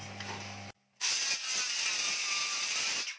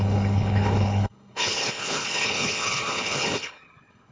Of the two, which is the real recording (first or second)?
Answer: first